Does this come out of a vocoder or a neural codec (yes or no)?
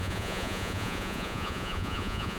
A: yes